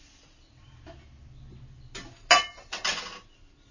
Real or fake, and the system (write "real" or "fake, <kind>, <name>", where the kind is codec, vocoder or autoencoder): real